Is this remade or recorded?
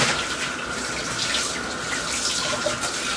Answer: recorded